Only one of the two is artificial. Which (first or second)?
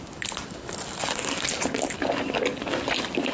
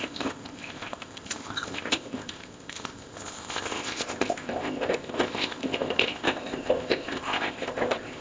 second